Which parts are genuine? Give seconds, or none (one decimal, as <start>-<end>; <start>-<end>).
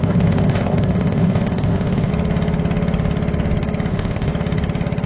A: 2.1-3.9; 4.3-5.1